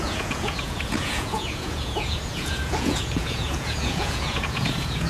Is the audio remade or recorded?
remade